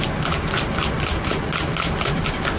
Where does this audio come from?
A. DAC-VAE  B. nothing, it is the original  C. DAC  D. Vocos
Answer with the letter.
B